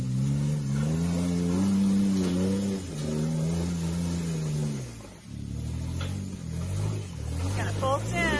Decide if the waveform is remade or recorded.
recorded